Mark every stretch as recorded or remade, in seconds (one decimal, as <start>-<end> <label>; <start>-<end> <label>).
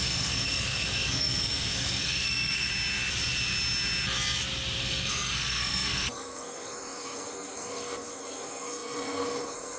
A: 0.0-2.7 remade; 2.7-4.8 recorded; 4.8-9.8 remade